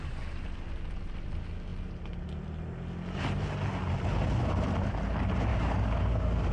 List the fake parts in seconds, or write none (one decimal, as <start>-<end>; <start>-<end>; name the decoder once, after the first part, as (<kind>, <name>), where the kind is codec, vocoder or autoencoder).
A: 5.5-6.5 (codec, DAC)